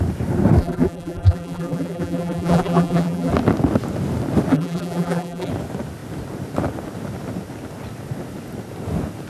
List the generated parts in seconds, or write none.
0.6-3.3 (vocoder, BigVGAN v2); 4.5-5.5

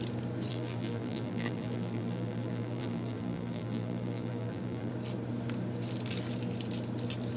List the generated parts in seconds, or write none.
0.5-4.9 (vocoder, BigVGAN v2)

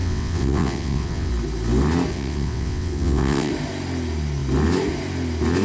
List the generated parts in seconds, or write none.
0.0-1.3 (vocoder, WaveNeXt); 2.1-3.5